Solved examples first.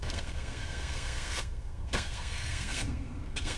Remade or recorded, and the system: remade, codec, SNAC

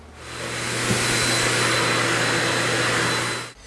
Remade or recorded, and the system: recorded